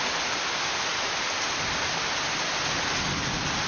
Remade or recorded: recorded